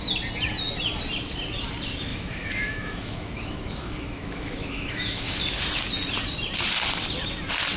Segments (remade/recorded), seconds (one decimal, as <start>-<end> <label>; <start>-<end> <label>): 0.0-2.1 recorded; 2.1-5.4 remade; 5.4-7.8 recorded